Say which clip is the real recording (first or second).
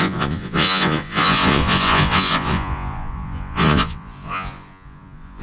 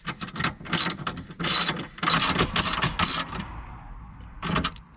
second